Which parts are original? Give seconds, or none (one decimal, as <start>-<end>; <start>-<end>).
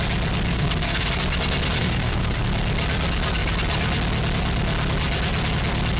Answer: 0.0-0.5; 1.2-1.8; 2.4-6.0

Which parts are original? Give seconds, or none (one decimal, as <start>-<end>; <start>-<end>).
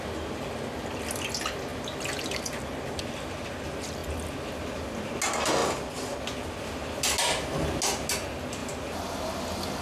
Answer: 0.0-9.8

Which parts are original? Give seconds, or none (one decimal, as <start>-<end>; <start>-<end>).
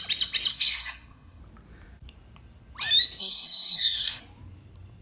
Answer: 0.0-0.5; 1.4-3.2; 4.2-5.0